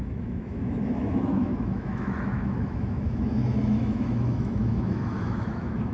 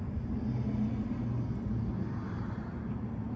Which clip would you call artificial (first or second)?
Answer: first